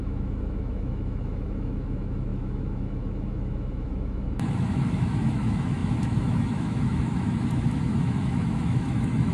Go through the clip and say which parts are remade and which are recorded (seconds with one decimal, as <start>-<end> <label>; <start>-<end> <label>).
0.0-9.3 remade